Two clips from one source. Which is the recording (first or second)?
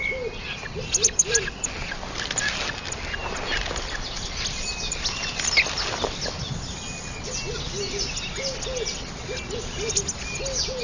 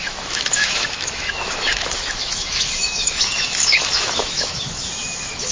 first